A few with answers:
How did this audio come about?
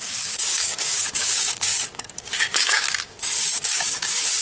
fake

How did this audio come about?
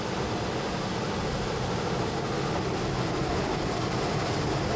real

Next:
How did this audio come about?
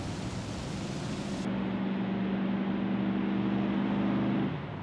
real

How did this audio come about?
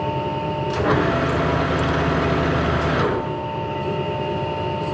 real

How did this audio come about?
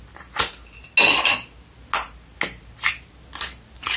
real